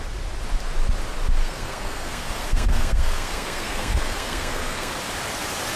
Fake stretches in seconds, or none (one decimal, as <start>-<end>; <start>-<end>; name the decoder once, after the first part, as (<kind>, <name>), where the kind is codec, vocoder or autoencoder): 1.4-4.9 (codec, SNAC)